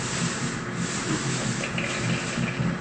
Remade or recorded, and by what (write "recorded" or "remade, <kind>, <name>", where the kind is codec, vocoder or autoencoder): recorded